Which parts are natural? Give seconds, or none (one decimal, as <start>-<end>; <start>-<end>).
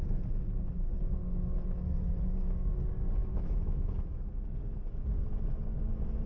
0.0-3.2; 4.3-6.3